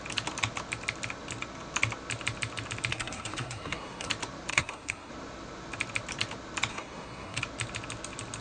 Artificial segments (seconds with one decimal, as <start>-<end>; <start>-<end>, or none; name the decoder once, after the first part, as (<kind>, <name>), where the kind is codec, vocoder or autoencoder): 2.9-4.1 (codec, SNAC); 4.5-5.1; 6.7-7.4